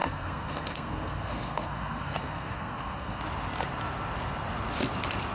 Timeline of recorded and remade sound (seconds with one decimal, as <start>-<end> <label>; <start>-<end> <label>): 0.0-3.2 remade; 3.2-5.3 recorded